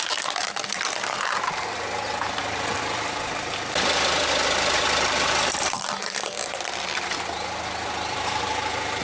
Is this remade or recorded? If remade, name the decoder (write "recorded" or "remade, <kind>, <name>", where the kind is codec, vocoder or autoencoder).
remade, vocoder, BigVGAN v2